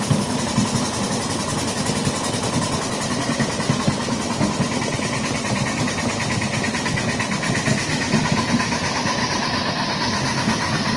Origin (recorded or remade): recorded